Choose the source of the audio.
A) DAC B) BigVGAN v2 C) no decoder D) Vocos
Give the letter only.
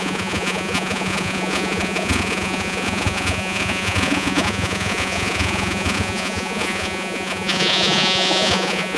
D